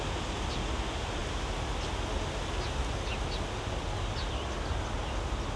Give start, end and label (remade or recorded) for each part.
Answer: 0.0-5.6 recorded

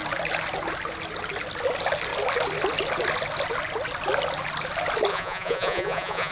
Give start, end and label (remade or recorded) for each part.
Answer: 0.0-5.1 recorded; 5.1-6.3 remade

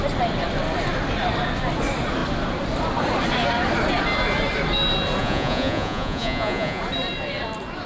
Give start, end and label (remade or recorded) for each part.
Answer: 0.0-5.2 recorded; 5.2-6.8 remade; 6.8-7.9 recorded

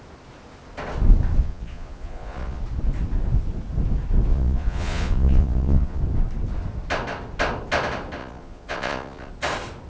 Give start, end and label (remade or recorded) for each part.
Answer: 0.0-1.4 recorded; 1.4-2.6 remade; 2.6-4.3 recorded; 4.3-6.0 remade; 6.0-8.2 recorded; 8.2-9.3 remade; 9.3-9.9 recorded